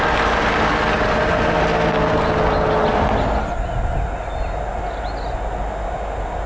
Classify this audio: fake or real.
real